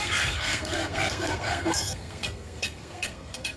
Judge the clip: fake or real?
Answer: fake